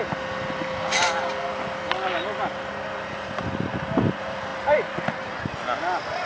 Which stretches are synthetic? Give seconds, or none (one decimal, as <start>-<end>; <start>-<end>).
none